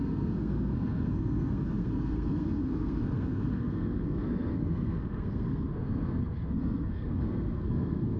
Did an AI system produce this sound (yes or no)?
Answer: yes